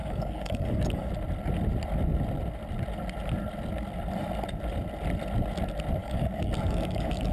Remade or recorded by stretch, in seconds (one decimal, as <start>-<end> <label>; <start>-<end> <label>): 0.0-1.1 remade; 1.1-6.0 recorded; 6.0-7.3 remade